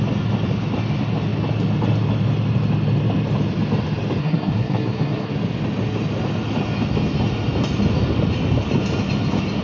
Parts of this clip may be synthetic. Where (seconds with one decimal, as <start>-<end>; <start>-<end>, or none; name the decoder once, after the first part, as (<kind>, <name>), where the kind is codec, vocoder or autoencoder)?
4.2-5.3 (codec, SNAC)